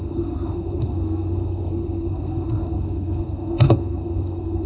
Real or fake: fake